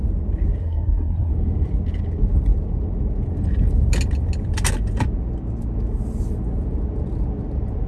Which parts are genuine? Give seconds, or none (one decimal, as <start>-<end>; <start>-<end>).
0.0-0.6; 1.3-7.9